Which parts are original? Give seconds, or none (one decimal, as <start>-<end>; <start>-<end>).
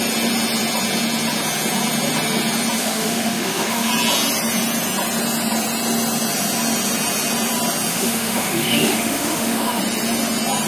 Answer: 0.0-2.8; 3.9-7.9; 9.8-10.7